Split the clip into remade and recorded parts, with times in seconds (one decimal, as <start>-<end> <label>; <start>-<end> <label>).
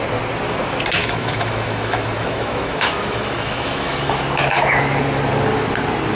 0.0-1.0 recorded; 1.0-4.2 remade; 4.2-6.1 recorded